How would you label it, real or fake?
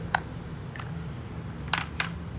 real